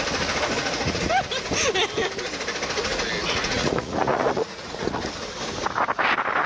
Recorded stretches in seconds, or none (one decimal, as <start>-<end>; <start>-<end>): 0.0-0.6; 1.1-3.2; 5.0-6.5